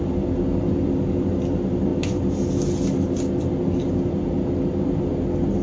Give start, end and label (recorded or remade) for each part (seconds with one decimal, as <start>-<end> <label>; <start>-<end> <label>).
0.0-5.6 recorded